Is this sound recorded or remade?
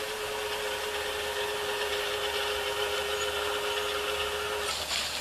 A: recorded